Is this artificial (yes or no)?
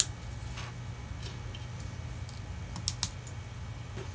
no